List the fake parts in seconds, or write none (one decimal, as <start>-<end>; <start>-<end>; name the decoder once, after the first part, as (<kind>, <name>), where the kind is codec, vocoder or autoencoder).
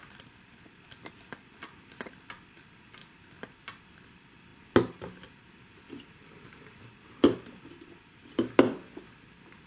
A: none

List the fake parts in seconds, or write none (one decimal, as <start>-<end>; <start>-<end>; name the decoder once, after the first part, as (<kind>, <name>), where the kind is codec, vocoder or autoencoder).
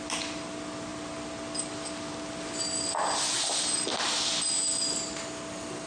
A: none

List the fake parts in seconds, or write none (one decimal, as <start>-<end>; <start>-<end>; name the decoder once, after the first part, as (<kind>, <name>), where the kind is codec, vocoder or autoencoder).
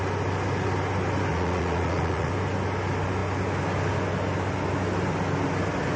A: 1.3-2.3 (vocoder, Vocos)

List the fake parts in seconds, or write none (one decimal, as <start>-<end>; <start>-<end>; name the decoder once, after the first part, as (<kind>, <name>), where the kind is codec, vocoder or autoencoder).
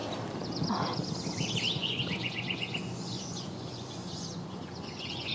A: 1.8-5.3 (vocoder, Vocos)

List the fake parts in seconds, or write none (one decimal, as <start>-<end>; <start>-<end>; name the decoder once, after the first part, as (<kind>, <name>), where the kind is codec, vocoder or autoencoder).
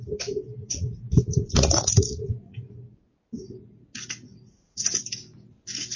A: 0.6-2.7 (vocoder, Vocos); 4.3-5.0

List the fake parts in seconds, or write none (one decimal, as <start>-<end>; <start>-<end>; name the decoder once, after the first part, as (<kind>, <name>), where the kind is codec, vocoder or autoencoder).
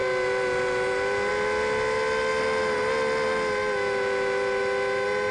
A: none